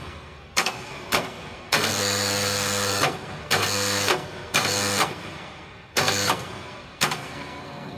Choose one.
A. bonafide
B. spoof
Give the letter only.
B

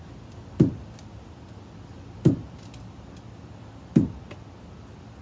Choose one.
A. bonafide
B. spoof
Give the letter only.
A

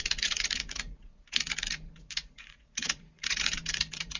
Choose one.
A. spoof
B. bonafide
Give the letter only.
A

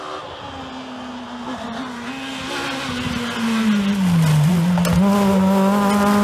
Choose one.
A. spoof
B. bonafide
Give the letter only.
B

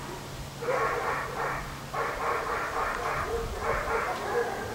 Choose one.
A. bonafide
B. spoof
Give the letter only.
A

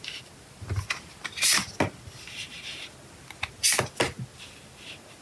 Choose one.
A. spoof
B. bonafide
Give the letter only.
B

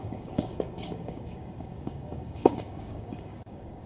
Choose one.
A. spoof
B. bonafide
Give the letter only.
A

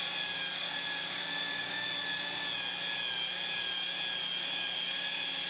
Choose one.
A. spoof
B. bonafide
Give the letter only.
B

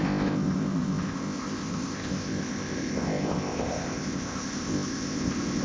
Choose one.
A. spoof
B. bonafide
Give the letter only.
A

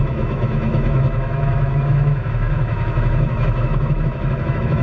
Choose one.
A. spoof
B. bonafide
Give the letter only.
A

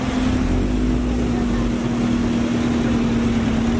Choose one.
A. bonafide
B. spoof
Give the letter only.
A